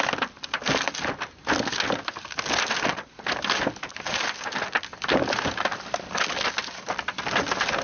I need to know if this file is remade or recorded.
recorded